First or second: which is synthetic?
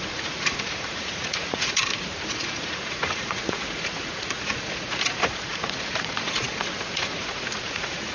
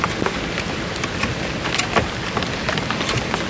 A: first